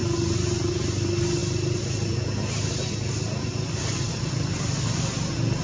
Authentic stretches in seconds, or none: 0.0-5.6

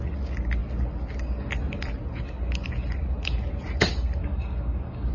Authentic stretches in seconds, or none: 0.0-4.2

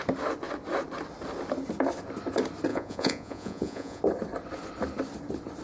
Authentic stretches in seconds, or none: 0.0-2.7; 4.0-5.6

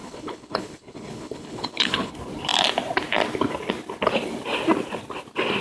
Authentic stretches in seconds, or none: 2.1-5.6

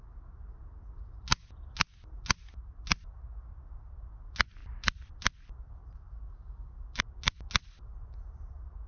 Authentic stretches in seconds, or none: 0.0-4.6; 7.0-8.9